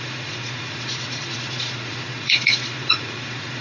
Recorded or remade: remade